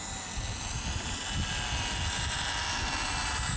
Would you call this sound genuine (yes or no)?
yes